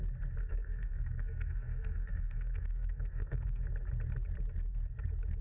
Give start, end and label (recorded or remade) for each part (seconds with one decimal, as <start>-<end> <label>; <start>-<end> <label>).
0.0-0.4 recorded; 0.4-3.6 remade; 3.6-5.4 recorded